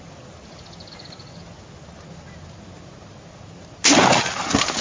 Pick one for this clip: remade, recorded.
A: recorded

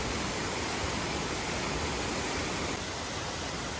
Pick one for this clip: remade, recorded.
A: recorded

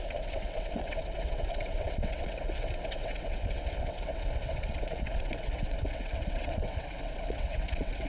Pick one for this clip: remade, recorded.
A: remade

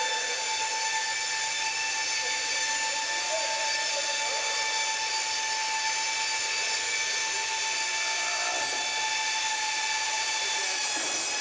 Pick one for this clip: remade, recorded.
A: recorded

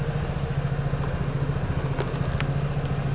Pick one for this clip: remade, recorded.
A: recorded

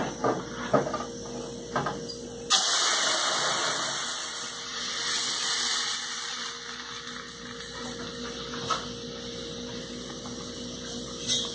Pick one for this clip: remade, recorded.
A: recorded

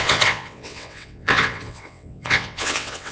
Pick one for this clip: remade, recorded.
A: remade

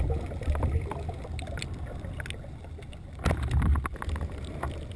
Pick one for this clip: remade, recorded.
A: recorded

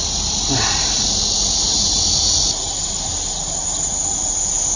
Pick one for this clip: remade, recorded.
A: recorded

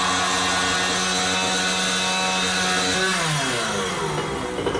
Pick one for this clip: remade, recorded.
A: recorded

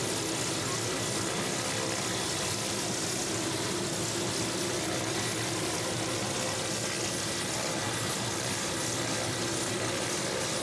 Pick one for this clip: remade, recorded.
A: recorded